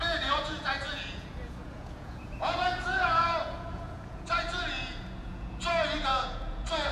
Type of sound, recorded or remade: remade